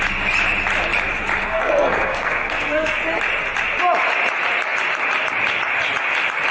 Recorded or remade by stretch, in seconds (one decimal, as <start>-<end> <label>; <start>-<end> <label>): 0.0-1.4 recorded; 1.4-3.0 remade; 3.0-6.5 recorded